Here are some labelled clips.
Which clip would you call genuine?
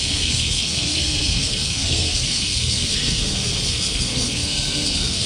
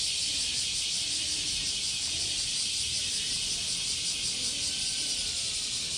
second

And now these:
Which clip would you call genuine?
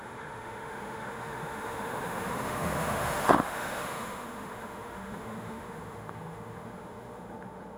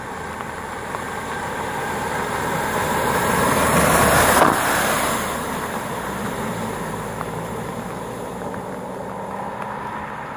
second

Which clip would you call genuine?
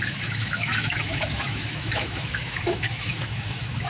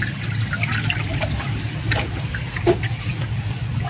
second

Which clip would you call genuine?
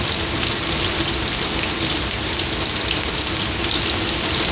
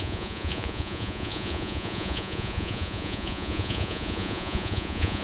first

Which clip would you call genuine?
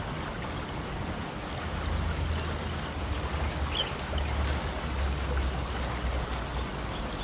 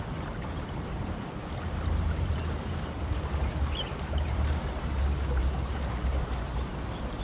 first